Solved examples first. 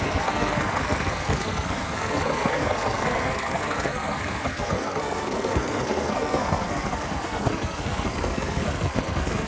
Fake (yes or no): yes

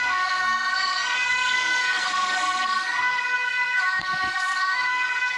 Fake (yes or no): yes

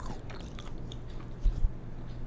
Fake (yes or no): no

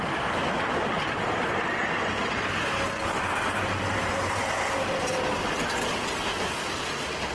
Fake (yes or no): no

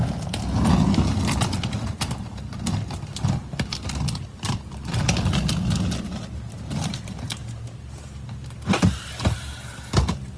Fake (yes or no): no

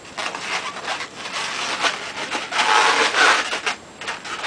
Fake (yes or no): no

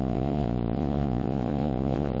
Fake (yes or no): yes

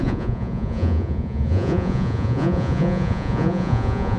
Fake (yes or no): yes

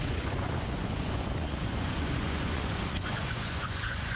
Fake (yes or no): yes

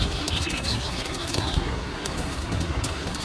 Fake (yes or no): yes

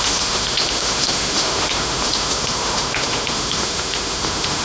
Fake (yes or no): yes